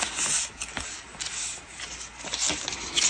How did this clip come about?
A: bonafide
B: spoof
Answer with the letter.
A